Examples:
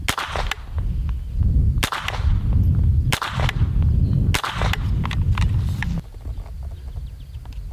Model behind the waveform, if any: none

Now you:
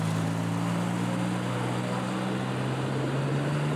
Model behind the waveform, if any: none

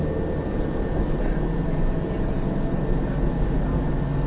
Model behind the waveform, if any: none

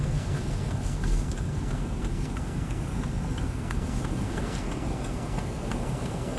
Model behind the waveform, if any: codec, SNAC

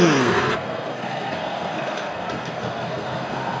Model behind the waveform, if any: codec, SNAC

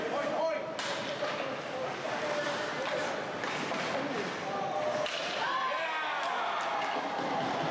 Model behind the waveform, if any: none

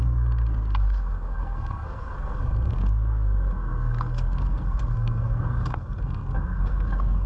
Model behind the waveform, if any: codec, SNAC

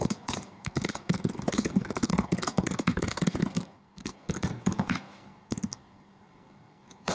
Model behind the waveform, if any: codec, SNAC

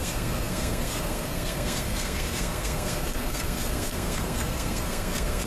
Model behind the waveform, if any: codec, SNAC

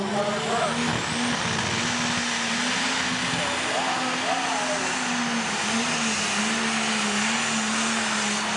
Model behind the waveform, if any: none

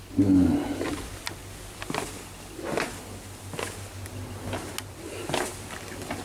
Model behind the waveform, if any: none